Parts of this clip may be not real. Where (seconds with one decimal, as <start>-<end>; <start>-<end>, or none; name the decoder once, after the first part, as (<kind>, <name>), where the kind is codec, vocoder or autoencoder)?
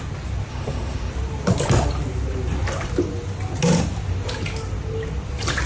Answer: 0.5-1.1 (autoencoder, DAC-VAE)